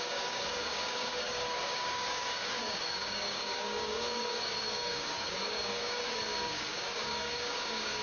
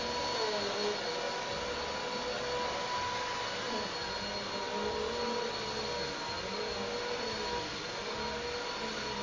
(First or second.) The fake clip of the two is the first